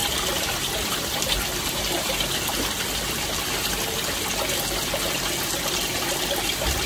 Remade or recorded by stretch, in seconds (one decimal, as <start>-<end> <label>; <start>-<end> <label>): 0.0-4.1 remade; 4.1-6.9 recorded